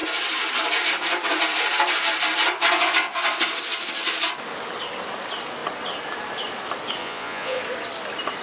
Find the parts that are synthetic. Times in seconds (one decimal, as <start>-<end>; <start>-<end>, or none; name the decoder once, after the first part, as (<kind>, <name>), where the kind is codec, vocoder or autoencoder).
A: 7.0-7.6 (vocoder, Vocos)